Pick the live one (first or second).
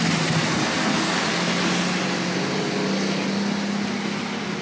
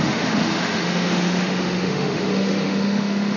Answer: first